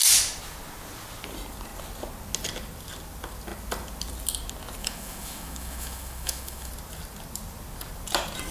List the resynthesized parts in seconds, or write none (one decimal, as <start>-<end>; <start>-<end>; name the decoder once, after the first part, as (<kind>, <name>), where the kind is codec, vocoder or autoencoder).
4.8-6.7 (autoencoder, DAC-VAE)